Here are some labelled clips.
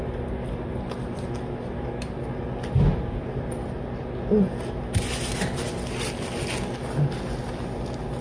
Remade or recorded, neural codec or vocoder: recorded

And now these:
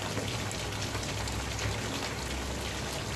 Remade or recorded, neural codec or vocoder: recorded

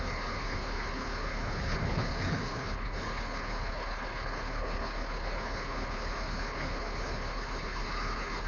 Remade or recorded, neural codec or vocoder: remade, codec, HILCodec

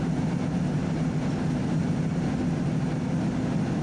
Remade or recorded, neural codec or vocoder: recorded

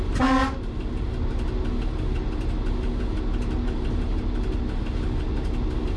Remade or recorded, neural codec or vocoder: recorded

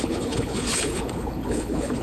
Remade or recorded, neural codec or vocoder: remade, codec, HILCodec